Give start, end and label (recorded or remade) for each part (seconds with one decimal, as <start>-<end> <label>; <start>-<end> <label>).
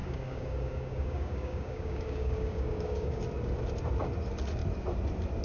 0.0-3.2 remade; 3.2-5.4 recorded